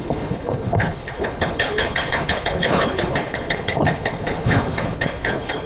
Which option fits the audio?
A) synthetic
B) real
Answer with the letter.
A